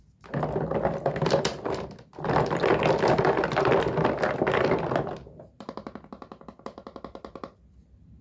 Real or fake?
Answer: real